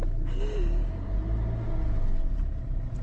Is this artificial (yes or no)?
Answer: no